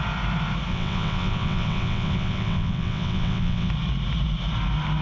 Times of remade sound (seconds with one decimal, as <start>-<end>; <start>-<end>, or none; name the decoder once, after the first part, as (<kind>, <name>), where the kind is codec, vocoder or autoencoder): 0.7-3.7 (vocoder, WaveNeXt)